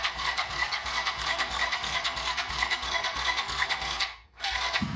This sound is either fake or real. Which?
fake